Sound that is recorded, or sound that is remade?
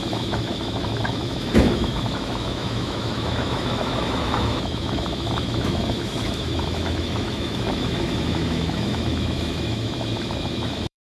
remade